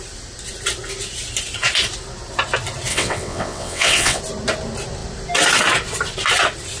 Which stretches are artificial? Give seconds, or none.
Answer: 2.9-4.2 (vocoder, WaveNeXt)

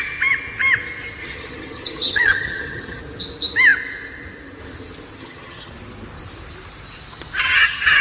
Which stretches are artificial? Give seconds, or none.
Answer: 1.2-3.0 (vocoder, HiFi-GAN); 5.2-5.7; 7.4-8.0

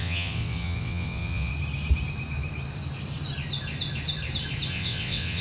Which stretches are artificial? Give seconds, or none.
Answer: 0.0-1.5 (vocoder, WaveNeXt); 4.7-5.4